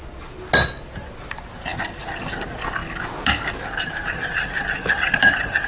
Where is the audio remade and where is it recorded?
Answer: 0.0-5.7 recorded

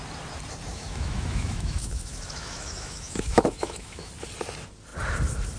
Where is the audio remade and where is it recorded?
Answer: 0.0-0.7 recorded; 0.7-4.1 remade; 4.1-5.6 recorded

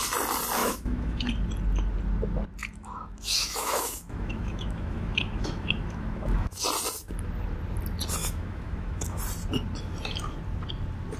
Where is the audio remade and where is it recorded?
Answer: 0.0-0.6 recorded; 0.6-1.3 remade; 1.3-2.6 recorded; 2.6-6.6 remade; 6.6-8.2 recorded; 8.2-9.2 remade; 9.2-11.2 recorded

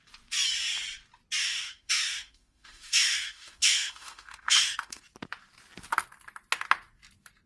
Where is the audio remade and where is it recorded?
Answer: 0.0-1.4 recorded; 1.4-5.0 remade; 5.0-7.5 recorded

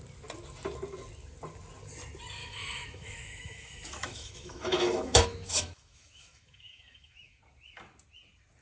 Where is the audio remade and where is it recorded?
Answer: 0.0-2.4 recorded; 2.4-7.4 remade; 7.4-8.6 recorded

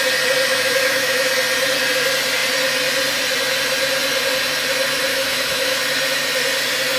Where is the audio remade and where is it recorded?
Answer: 0.0-0.5 recorded; 0.5-1.3 remade; 1.3-5.1 recorded; 5.1-5.8 remade; 5.8-7.0 recorded

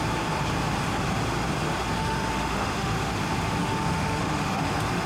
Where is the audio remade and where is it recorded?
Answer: 0.0-2.0 recorded; 2.0-3.1 remade; 3.1-3.6 recorded; 3.6-4.6 remade; 4.6-5.1 recorded

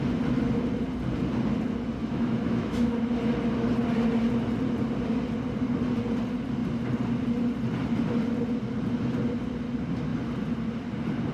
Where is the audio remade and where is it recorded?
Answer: 0.0-2.0 recorded; 2.0-3.1 remade; 3.1-11.3 recorded